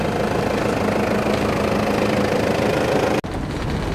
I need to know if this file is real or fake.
real